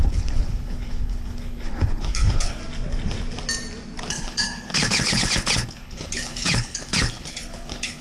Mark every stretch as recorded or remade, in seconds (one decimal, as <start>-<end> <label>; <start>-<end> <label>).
0.0-2.6 remade; 2.6-4.1 recorded; 4.1-8.0 remade